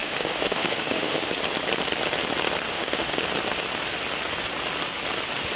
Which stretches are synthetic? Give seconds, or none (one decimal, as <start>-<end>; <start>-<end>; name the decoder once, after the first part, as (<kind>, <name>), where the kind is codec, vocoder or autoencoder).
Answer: 0.0-1.3 (autoencoder, DAC-VAE); 2.7-3.2

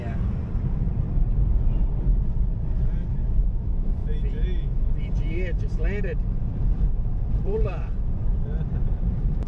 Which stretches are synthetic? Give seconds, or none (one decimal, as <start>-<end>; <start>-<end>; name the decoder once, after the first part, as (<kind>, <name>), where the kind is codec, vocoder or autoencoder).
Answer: 0.0-4.0 (vocoder, BigVGAN v2); 6.0-9.5

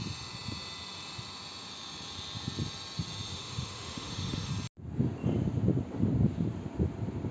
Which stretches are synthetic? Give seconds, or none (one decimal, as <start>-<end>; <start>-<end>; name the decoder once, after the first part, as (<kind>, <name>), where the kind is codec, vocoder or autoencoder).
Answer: 3.3-4.5 (autoencoder, DAC-VAE)

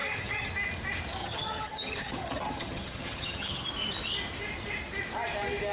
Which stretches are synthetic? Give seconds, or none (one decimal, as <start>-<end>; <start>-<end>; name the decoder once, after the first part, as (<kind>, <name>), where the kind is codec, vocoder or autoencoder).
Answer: 0.0-0.5 (vocoder, HiFi-GAN); 1.2-3.7

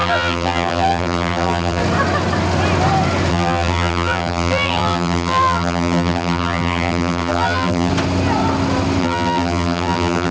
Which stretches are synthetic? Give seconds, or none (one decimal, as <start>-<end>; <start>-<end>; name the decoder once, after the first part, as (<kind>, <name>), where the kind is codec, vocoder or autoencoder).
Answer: 0.0-1.8 (vocoder, BigVGAN v2); 3.3-7.9; 9.0-10.3

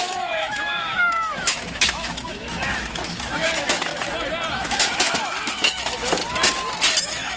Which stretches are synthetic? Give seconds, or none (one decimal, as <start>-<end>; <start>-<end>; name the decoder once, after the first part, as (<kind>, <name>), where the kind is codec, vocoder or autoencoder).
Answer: 0.0-3.9 (autoencoder, DAC-VAE); 4.5-6.2; 7.0-7.4

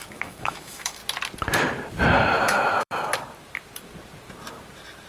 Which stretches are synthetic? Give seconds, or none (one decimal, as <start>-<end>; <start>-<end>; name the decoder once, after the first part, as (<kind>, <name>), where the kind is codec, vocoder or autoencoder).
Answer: 0.0-1.0 (autoencoder, DAC-VAE); 2.4-3.1